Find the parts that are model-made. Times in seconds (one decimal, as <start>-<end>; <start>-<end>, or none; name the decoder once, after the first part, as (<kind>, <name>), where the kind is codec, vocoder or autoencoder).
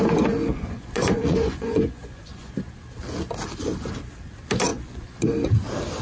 0.5-2.5 (vocoder, Vocos); 4.7-5.3